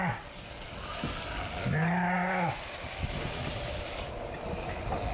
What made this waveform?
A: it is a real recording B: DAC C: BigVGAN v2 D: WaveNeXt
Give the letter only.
A